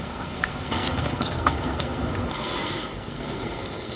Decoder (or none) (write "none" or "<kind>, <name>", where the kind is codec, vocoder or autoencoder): codec, SNAC